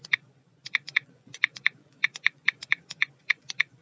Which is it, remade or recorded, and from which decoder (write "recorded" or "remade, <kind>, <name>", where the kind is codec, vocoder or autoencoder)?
remade, vocoder, Vocos